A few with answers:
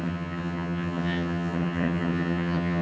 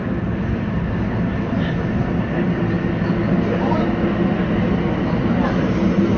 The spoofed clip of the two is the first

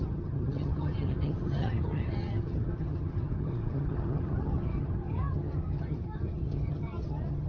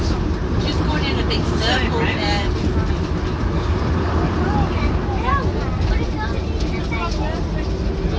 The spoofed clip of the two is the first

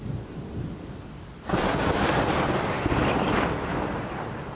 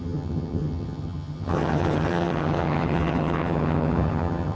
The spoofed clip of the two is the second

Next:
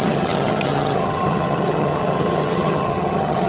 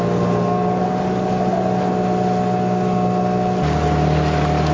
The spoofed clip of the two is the first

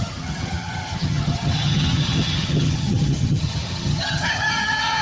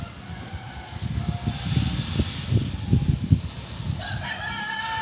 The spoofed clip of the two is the first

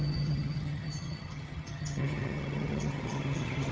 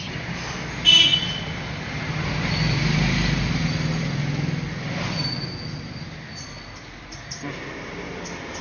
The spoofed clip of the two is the first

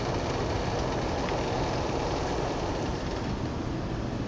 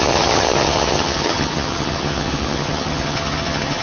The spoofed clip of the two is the second